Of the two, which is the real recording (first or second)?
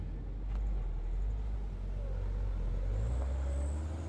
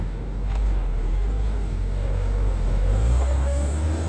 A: first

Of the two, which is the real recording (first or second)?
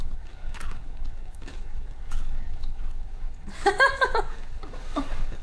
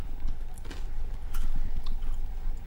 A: second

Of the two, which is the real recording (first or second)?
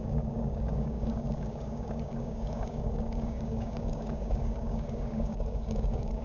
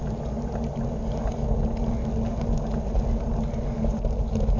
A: second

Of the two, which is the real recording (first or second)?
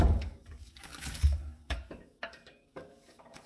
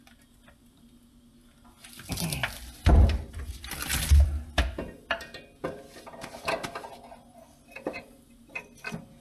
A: second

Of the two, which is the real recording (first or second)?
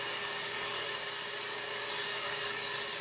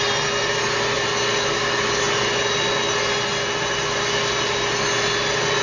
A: second